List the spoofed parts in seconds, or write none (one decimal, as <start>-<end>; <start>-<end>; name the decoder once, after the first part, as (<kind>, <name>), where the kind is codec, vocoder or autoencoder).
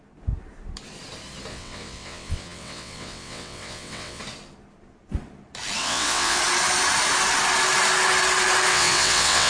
1.5-4.2 (vocoder, WaveNeXt); 5.8-6.4; 8.7-9.5